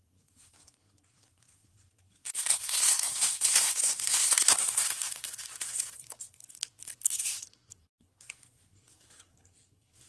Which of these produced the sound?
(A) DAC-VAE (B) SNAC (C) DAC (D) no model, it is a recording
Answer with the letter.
B